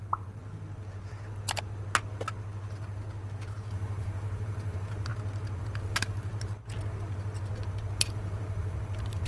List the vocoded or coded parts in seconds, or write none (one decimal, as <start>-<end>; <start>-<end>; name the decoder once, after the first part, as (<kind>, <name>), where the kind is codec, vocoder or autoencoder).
0.0-0.4 (vocoder, BigVGAN v2); 3.7-5.1; 5.6-6.3; 7.9-9.3